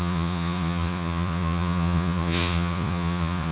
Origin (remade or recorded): remade